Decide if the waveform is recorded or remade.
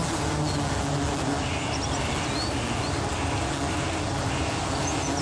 recorded